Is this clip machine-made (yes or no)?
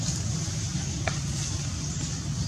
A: no